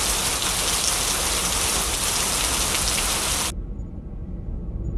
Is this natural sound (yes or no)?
yes